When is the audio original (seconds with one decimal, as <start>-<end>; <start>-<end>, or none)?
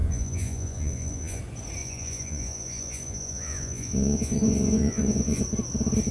1.4-1.8; 5.4-6.1